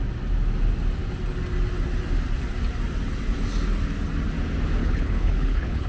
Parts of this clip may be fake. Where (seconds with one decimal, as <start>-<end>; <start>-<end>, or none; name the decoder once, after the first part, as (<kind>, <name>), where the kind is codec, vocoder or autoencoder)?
4.8-5.9 (codec, HILCodec)